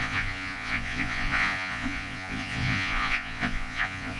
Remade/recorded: remade